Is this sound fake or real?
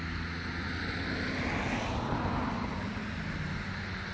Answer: real